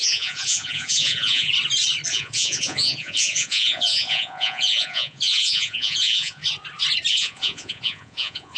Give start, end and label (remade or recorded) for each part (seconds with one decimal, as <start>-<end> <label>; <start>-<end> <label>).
0.0-1.5 remade; 1.5-2.1 recorded; 2.1-6.4 remade; 6.4-7.1 recorded; 7.1-8.6 remade